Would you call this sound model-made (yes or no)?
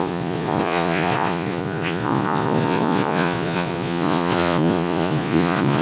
yes